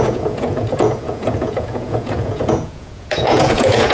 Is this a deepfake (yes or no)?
yes